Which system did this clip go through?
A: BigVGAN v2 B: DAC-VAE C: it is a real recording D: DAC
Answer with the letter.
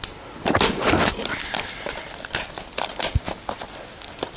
C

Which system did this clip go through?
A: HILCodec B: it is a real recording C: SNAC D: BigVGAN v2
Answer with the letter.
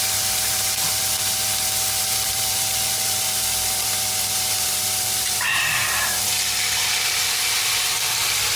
D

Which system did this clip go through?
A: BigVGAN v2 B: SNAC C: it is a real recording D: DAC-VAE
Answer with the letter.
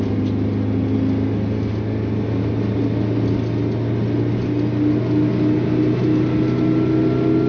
C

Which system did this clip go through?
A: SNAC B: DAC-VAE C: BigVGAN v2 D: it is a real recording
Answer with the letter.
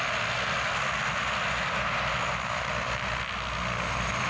D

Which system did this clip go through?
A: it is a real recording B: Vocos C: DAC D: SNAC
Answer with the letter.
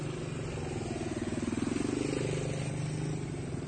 A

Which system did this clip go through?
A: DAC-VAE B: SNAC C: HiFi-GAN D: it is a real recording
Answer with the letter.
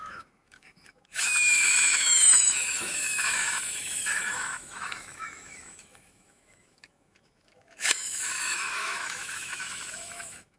A